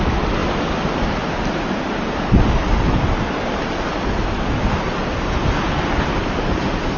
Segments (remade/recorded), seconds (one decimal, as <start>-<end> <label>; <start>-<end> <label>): 0.0-7.0 recorded